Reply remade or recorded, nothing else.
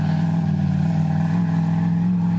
recorded